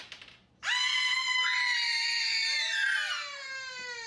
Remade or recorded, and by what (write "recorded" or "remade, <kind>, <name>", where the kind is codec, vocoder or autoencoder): recorded